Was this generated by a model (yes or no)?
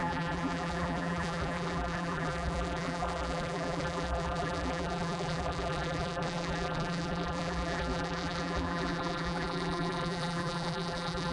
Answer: yes